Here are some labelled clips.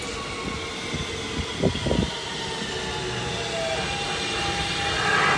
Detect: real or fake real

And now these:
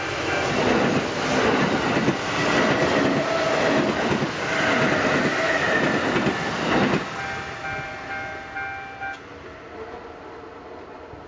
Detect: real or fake real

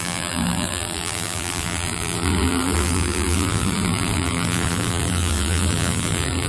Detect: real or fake fake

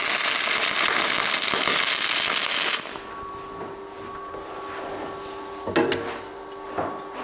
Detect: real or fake real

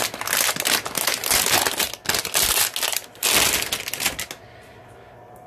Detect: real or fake real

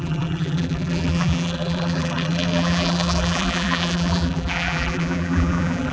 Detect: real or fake fake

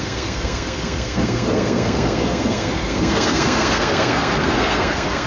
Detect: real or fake fake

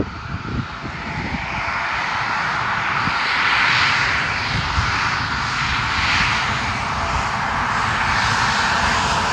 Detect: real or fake real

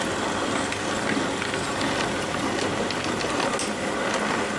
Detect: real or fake real